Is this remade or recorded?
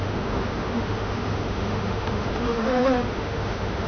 remade